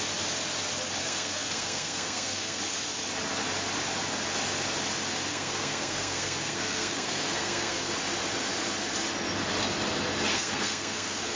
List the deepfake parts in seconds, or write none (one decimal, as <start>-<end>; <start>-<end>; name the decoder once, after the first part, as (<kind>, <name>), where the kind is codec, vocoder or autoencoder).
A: 1.0-2.6 (codec, SNAC); 5.3-7.9; 10.3-11.4